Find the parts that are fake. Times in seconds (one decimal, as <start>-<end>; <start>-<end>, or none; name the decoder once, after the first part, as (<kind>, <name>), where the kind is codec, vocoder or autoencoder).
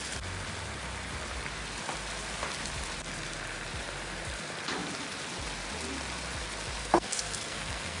6.8-8.0 (codec, SNAC)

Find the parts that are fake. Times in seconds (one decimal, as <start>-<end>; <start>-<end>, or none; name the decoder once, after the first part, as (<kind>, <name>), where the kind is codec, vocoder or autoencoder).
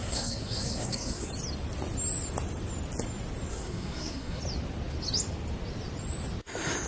0.0-1.3 (codec, SNAC); 3.5-4.4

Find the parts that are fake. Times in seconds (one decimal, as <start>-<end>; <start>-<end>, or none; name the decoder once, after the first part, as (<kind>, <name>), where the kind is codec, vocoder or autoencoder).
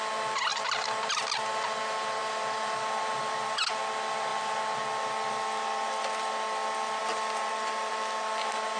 none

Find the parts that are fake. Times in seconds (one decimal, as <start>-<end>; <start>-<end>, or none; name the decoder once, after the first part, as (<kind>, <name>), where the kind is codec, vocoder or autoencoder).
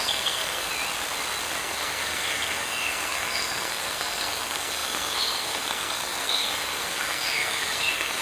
0.0-0.7 (codec, SNAC); 1.6-8.2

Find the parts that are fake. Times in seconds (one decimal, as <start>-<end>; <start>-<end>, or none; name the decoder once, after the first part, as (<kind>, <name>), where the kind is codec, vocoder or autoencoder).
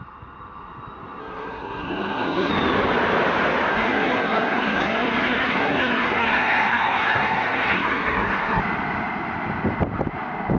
1.2-2.5 (codec, SNAC); 3.7-8.6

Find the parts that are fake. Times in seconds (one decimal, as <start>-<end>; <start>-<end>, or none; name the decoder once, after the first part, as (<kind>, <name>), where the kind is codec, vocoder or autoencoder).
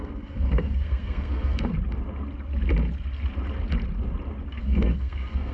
0.0-1.7 (codec, SNAC); 4.5-5.5